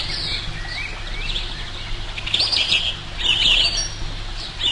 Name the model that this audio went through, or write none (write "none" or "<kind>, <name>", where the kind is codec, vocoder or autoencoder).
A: none